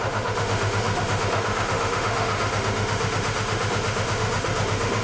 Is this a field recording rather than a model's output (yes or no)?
no